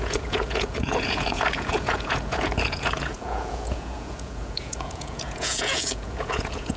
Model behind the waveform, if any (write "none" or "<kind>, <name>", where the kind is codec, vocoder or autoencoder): vocoder, Vocos